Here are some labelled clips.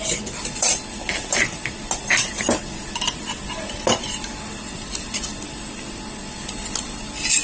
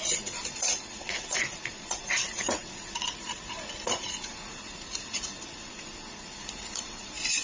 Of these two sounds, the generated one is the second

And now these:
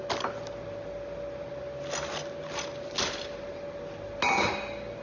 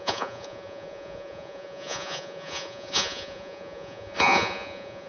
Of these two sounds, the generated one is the second